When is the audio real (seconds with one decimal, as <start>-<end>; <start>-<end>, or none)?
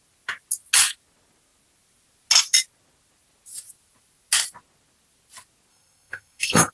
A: 0.0-5.7